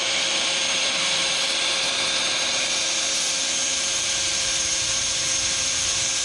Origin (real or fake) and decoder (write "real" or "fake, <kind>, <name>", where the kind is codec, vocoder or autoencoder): fake, vocoder, BigVGAN v2